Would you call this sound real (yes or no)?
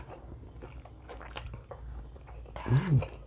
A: yes